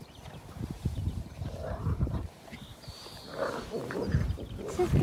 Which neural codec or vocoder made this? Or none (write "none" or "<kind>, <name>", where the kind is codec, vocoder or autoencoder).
vocoder, BigVGAN v2